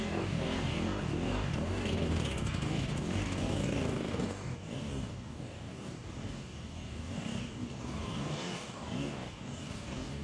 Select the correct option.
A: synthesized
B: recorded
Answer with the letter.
A